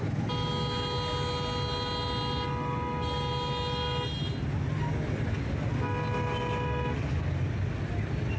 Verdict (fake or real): real